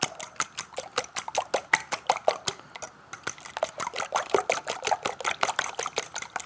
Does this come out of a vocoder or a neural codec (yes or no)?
no